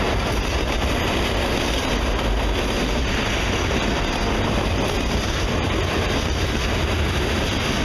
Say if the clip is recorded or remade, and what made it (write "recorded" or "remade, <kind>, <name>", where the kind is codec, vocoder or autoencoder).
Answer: recorded